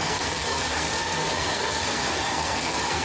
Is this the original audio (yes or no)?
no